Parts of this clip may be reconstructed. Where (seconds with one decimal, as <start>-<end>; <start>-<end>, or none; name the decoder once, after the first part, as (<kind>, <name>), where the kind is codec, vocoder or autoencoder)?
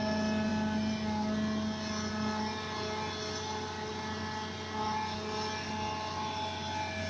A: none